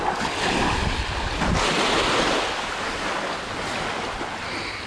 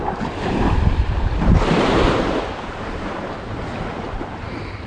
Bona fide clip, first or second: first